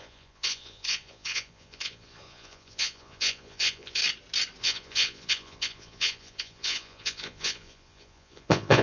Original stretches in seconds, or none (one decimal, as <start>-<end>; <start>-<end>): 4.0-4.6